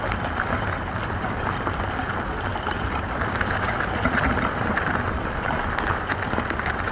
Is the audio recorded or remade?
recorded